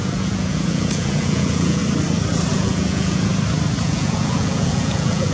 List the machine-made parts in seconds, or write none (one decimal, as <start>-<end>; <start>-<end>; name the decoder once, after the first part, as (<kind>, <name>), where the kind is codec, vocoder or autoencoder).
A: 0.0-1.8 (vocoder, Vocos); 2.5-3.3; 3.8-5.3